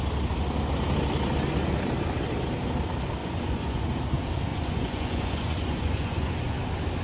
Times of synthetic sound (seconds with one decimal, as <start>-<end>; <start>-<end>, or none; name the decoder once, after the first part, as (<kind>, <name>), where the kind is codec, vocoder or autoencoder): 3.2-3.8 (vocoder, Vocos); 4.5-6.5